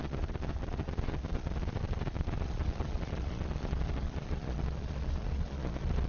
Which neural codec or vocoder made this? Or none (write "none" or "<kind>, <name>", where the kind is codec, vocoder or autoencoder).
vocoder, Vocos